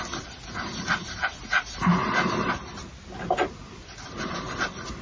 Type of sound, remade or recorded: recorded